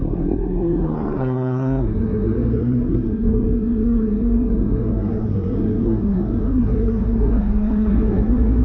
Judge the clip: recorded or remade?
remade